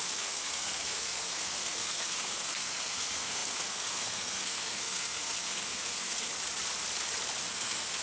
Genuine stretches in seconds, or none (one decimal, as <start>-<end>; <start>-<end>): 6.3-7.5